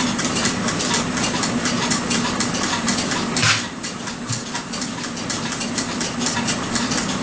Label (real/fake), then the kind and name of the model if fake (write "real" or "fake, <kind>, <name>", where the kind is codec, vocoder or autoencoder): real